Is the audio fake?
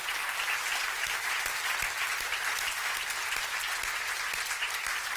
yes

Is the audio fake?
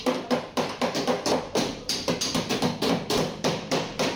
yes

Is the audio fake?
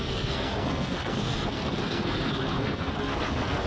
yes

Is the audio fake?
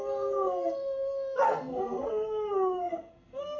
yes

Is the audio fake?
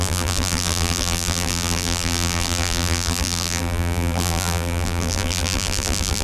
yes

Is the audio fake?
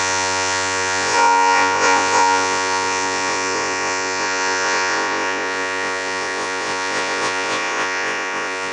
yes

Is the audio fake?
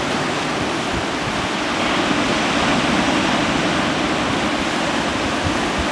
no